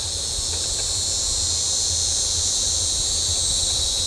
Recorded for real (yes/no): yes